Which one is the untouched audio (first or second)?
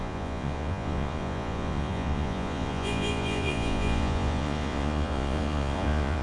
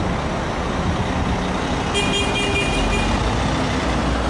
second